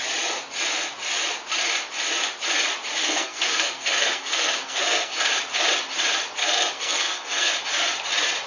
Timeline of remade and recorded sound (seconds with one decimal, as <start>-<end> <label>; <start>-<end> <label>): 0.0-3.0 recorded; 3.0-5.3 remade; 5.3-6.4 recorded; 6.4-7.5 remade; 7.5-8.5 recorded